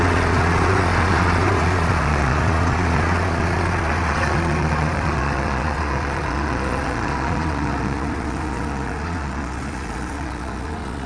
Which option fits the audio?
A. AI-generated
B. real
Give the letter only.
A